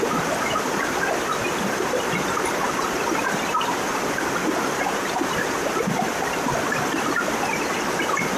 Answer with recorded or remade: remade